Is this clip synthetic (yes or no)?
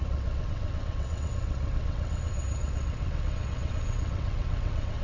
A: yes